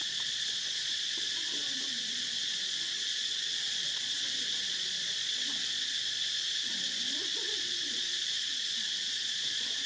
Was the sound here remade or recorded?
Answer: remade